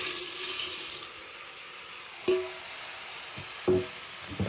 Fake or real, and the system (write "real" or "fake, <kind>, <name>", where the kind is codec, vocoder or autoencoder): real